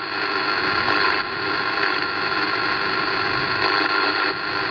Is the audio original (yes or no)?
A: yes